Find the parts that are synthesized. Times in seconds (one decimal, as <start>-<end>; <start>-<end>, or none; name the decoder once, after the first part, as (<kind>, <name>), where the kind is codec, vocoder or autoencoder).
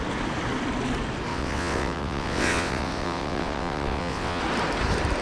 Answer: 1.3-4.4 (vocoder, WaveNeXt)